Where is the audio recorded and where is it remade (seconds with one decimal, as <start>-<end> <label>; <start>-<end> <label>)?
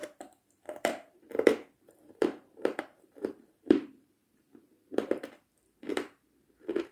0.0-6.9 remade